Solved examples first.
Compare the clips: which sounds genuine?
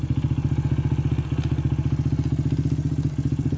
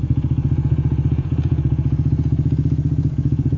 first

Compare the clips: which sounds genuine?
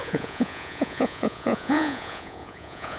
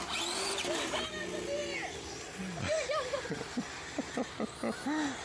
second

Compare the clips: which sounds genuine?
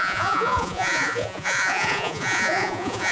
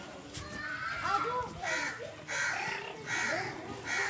second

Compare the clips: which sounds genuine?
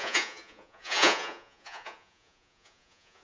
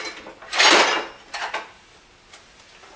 second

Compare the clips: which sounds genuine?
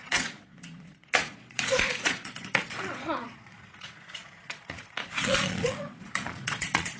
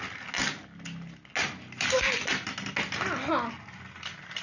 second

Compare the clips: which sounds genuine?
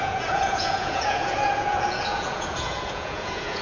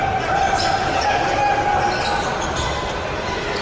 second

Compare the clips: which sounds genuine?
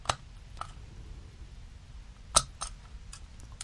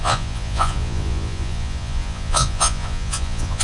first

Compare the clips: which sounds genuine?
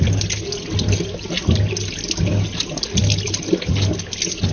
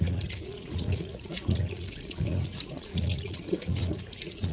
first